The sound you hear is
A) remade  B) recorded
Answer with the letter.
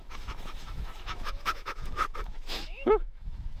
A